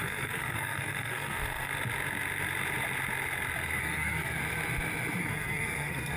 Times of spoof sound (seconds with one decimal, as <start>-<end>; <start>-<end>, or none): 0.0-1.7; 3.8-4.4; 5.2-6.2

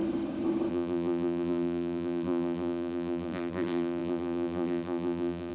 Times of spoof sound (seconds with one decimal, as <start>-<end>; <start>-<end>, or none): 0.7-5.5

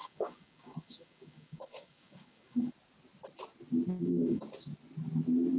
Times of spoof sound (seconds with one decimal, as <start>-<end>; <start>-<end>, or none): 0.0-2.7; 4.0-4.5

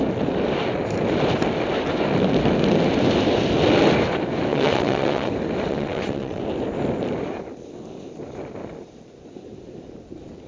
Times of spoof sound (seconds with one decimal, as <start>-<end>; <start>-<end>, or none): 4.5-5.3; 5.7-6.4

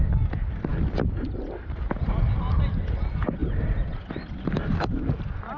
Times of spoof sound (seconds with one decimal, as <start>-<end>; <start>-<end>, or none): 3.4-4.1

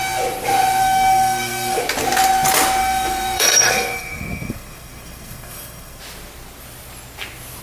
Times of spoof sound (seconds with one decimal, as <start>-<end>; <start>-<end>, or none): 0.8-1.8; 2.8-6.0

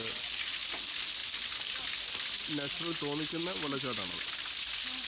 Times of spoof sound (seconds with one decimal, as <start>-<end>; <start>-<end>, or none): none